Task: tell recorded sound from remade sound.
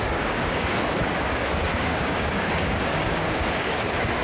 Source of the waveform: remade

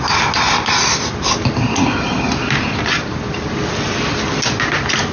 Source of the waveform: recorded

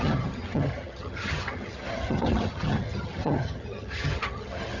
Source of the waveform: remade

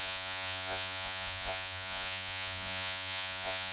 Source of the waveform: remade